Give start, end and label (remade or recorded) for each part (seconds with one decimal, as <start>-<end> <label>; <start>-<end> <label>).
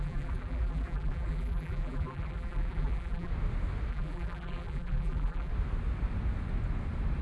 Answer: 0.0-3.3 remade; 3.3-3.9 recorded; 3.9-5.5 remade; 5.5-7.2 recorded